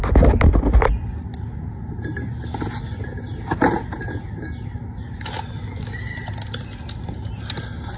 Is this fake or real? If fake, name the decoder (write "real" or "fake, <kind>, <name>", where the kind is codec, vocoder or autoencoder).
real